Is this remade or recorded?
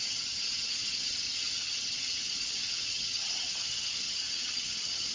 remade